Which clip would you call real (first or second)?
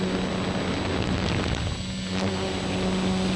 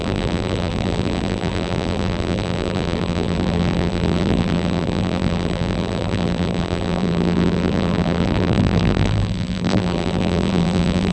first